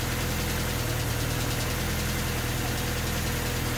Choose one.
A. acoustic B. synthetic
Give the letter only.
A